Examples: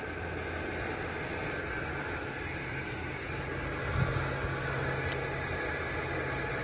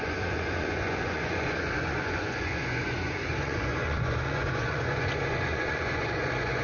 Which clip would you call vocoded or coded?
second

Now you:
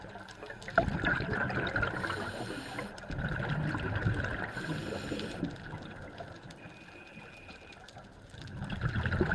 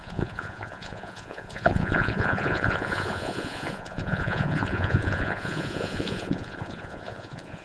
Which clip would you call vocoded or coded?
second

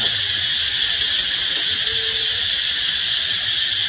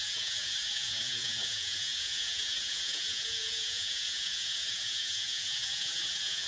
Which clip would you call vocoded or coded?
second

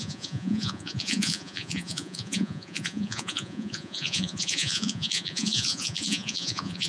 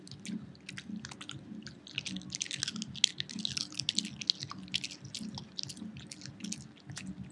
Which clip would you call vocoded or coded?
first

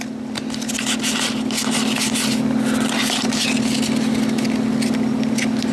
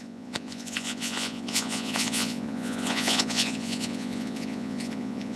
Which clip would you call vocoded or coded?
second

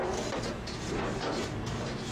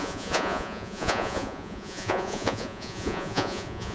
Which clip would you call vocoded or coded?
second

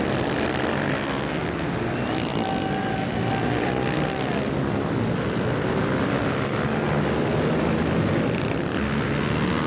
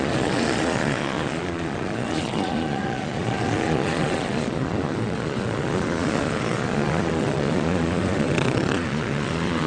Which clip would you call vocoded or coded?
second